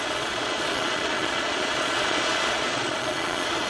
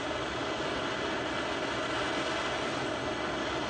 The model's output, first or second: first